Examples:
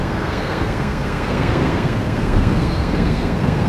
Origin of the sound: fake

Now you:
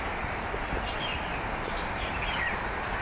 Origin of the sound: fake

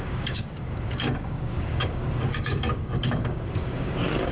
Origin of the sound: fake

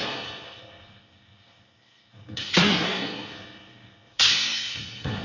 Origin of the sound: fake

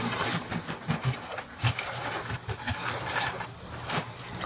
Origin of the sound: fake